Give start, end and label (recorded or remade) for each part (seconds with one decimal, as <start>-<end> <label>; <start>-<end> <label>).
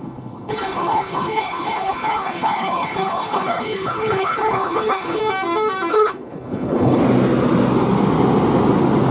0.0-5.2 remade; 5.2-5.9 recorded; 5.9-7.0 remade; 7.0-9.1 recorded